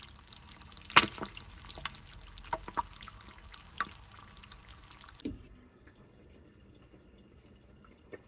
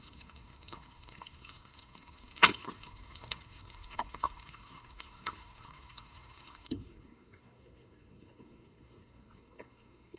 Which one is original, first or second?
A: first